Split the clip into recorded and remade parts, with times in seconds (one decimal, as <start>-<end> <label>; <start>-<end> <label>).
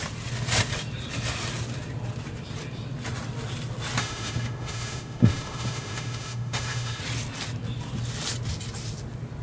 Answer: 0.0-4.0 recorded; 4.0-7.0 remade; 7.0-9.4 recorded